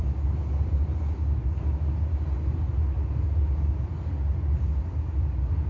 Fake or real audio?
real